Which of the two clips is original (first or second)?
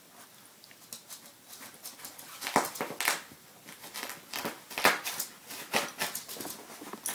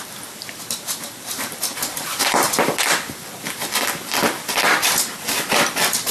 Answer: first